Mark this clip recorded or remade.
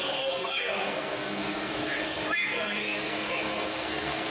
remade